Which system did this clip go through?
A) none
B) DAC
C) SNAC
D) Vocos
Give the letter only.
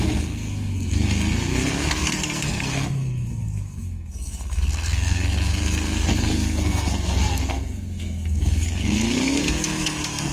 C